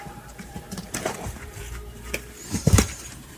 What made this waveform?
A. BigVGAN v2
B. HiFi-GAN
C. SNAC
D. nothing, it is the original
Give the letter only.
A